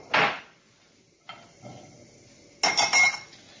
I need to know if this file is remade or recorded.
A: recorded